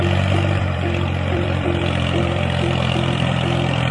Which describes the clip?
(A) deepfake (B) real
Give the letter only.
A